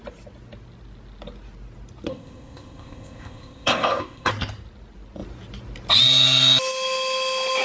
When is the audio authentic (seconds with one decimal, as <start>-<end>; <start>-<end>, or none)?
0.0-2.1; 4.3-7.6